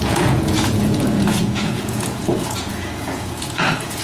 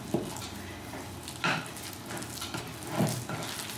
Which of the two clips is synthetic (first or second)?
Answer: first